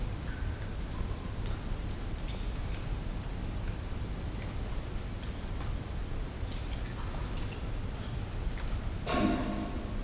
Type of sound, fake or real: real